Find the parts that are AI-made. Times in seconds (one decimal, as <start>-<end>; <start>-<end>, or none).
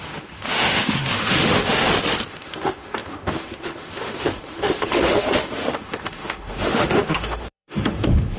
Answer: 0.0-1.8; 2.3-8.4